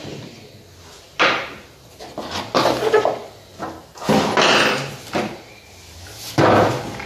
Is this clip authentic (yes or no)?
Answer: yes